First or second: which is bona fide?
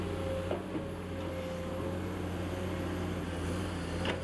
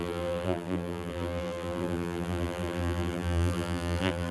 first